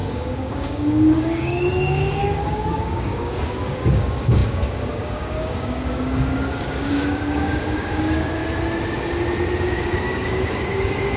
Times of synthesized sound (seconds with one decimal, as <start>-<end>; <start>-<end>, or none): 0.0-8.4; 9.6-11.2